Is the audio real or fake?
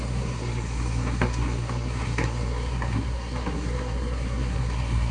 fake